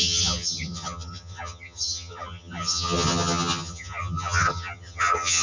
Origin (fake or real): fake